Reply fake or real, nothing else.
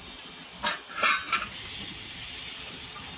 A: real